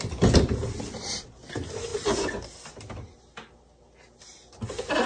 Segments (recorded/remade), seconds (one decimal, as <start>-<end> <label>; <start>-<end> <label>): 0.0-5.1 recorded